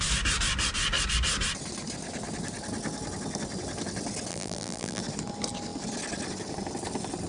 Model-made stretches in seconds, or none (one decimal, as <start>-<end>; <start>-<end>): 4.3-5.0